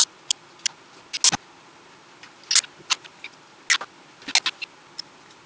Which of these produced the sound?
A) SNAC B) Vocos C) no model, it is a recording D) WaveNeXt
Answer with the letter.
C